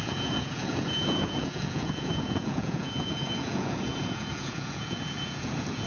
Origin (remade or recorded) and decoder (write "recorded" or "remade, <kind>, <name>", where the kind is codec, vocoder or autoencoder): remade, vocoder, Vocos